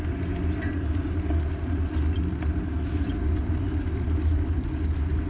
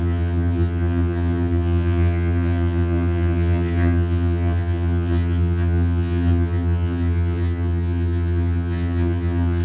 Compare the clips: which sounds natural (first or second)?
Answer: first